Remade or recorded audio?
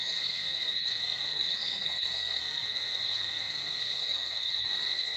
remade